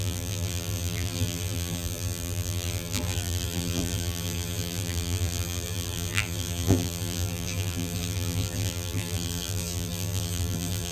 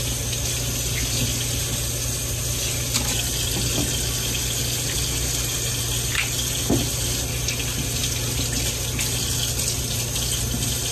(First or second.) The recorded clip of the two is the second